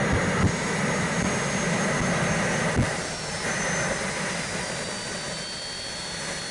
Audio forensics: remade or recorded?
recorded